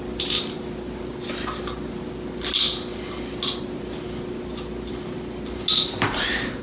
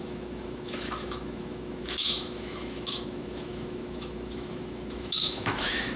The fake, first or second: second